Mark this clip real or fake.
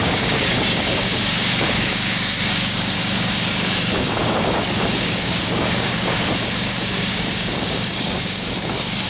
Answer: fake